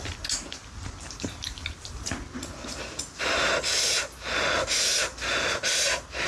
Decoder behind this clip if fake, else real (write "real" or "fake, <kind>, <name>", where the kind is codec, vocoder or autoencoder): real